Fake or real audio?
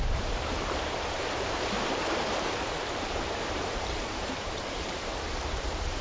fake